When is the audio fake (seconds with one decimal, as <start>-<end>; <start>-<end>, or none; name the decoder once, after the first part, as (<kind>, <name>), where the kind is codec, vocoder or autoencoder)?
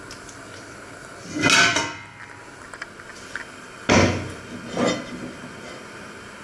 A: none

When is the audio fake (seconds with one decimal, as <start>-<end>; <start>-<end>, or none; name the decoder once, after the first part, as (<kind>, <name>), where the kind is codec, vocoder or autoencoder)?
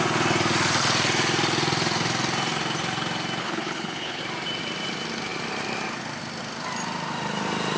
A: 3.4-4.2 (codec, HILCodec)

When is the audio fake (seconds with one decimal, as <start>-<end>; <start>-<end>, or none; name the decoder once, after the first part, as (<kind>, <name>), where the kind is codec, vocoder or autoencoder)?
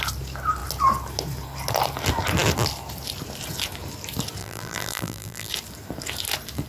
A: 4.4-5.5 (vocoder, BigVGAN v2)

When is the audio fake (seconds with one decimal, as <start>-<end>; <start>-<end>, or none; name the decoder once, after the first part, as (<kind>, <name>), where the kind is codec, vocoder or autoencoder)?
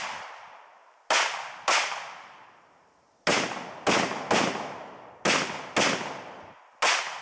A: none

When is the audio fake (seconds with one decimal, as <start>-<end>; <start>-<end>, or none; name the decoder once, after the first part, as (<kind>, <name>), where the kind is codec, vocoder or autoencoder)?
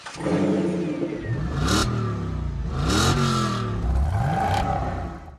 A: none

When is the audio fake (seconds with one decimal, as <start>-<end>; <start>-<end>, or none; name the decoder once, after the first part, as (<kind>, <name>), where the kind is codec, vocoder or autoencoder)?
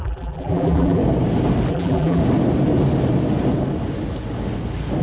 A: 0.0-1.0 (vocoder, BigVGAN v2); 1.7-2.2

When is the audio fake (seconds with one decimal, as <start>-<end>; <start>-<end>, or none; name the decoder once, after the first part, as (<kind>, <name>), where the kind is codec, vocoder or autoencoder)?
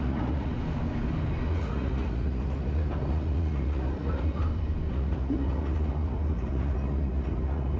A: 0.0-0.5 (vocoder, Vocos); 1.5-4.4; 4.9-7.8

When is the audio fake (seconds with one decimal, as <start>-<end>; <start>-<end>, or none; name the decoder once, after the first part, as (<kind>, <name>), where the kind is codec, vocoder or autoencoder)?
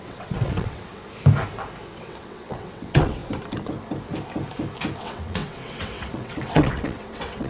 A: 0.0-0.9 (vocoder, WaveNeXt); 2.0-3.2; 5.0-7.5